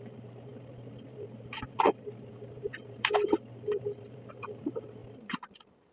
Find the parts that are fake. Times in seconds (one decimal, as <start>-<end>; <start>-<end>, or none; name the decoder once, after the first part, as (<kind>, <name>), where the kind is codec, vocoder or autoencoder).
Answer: 0.0-5.9 (vocoder, BigVGAN v2)